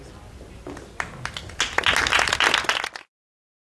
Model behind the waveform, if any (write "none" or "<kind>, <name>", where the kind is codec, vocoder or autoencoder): none